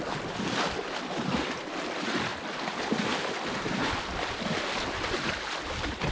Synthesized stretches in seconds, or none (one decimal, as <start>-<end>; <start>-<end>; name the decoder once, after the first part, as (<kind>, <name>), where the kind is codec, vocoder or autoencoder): none

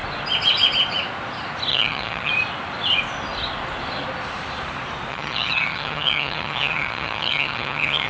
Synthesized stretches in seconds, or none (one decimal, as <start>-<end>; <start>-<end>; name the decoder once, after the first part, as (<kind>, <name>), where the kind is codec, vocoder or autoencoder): 1.7-2.3 (vocoder, HiFi-GAN); 5.1-8.1

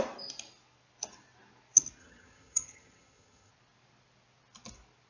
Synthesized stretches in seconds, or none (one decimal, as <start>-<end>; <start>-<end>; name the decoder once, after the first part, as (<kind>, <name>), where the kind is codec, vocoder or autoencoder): 2.0-3.5 (vocoder, HiFi-GAN)

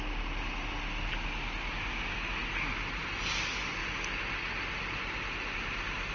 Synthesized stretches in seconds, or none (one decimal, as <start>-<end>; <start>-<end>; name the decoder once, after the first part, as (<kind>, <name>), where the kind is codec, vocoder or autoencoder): none

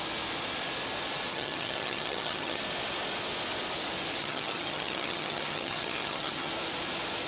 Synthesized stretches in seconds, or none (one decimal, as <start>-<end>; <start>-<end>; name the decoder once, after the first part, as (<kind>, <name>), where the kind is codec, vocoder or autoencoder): 1.3-2.6 (vocoder, HiFi-GAN); 4.2-6.5